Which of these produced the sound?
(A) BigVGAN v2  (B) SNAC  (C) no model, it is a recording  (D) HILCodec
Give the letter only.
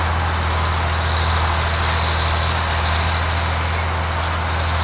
C